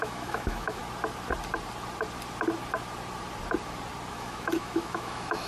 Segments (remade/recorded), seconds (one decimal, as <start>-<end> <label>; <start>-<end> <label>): 0.0-0.8 remade; 0.8-4.1 recorded; 4.1-5.5 remade